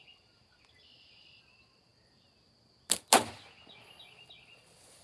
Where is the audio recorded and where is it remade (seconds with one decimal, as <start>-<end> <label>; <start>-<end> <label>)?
0.0-5.0 recorded